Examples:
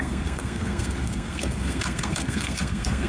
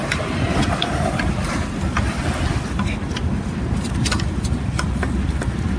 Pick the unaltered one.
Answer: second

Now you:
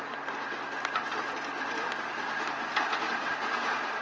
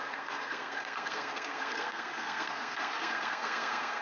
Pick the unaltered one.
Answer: first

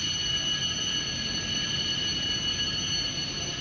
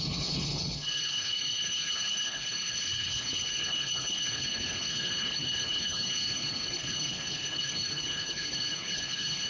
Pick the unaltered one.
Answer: first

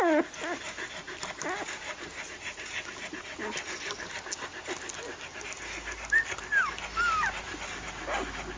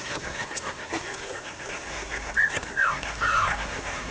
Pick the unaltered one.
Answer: first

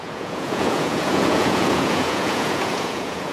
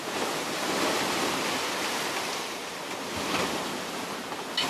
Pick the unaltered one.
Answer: second